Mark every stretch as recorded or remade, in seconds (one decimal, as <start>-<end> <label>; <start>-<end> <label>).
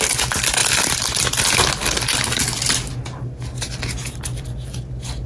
0.0-5.3 recorded